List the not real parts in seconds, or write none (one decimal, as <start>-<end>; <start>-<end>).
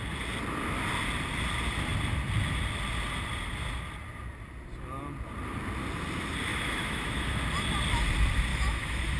6.5-7.4; 8.5-9.2